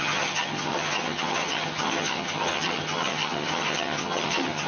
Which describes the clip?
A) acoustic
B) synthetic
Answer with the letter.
B